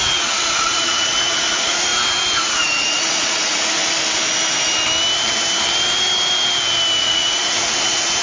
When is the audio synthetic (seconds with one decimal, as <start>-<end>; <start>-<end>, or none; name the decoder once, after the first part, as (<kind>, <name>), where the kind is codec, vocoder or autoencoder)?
0.0-1.9 (vocoder, Vocos); 2.4-3.8; 7.0-8.2